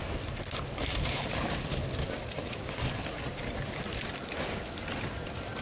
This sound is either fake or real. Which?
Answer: real